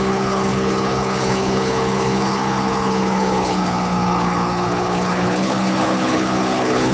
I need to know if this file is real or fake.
fake